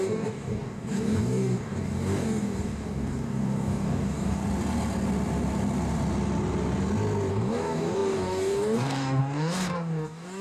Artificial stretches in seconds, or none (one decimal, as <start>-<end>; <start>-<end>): 0.0-4.4; 7.3-10.4